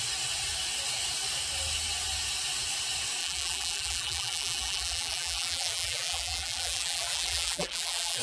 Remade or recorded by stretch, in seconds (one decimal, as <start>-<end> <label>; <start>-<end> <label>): 0.0-3.2 recorded; 3.2-8.2 remade